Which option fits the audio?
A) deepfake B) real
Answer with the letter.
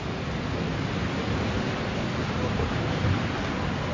B